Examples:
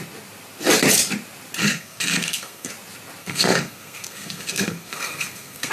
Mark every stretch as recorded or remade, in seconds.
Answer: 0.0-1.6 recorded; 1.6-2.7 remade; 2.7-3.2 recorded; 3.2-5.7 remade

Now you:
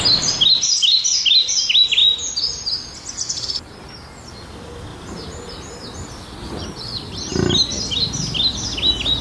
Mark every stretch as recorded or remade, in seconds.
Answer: 0.0-4.9 recorded; 4.9-6.1 remade; 6.1-9.2 recorded

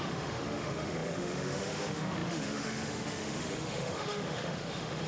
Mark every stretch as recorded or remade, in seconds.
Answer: 0.0-5.1 remade

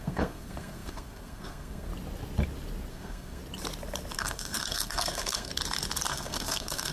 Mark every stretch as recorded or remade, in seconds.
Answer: 0.0-1.9 remade; 1.9-2.9 recorded; 2.9-3.4 remade; 3.4-4.2 recorded; 4.2-5.5 remade; 5.5-6.1 recorded; 6.1-6.9 remade

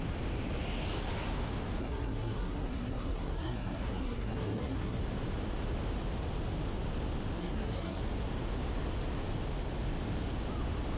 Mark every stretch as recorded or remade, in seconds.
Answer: 0.0-1.8 recorded; 1.8-5.0 remade; 5.0-7.4 recorded; 7.4-8.0 remade; 8.0-11.0 recorded

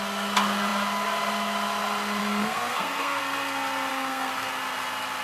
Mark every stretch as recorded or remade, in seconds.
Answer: 0.0-2.2 recorded; 2.2-3.2 remade; 3.2-3.9 recorded; 3.9-4.5 remade; 4.5-5.2 recorded